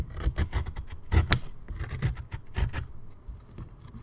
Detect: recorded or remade recorded